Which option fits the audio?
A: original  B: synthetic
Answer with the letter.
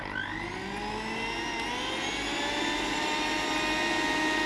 A